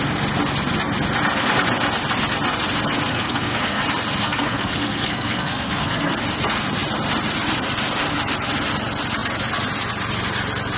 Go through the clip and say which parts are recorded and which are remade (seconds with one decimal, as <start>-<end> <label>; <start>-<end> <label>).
0.0-3.1 recorded; 3.1-3.8 remade; 3.8-4.2 recorded; 4.2-6.1 remade; 6.1-10.8 recorded